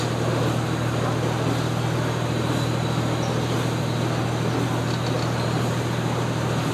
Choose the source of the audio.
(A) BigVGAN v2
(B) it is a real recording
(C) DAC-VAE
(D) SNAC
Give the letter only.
B